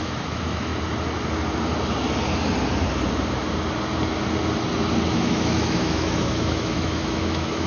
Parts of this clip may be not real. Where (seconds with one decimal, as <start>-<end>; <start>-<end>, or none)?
0.0-0.7; 5.1-7.7